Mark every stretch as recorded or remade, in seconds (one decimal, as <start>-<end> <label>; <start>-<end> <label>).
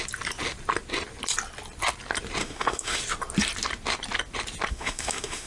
0.0-2.4 recorded; 2.4-3.0 remade; 3.0-4.7 recorded; 4.7-5.5 remade